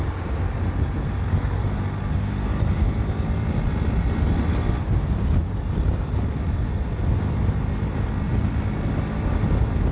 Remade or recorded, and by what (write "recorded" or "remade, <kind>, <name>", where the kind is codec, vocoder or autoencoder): recorded